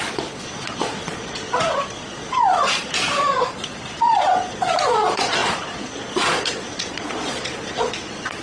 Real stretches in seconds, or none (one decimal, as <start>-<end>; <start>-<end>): none